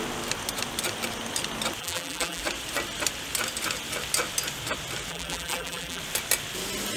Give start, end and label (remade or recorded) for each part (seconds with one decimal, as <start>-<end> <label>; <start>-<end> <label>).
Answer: 0.0-1.8 recorded; 1.8-2.4 remade; 2.4-5.1 recorded; 5.1-6.0 remade; 6.0-7.0 recorded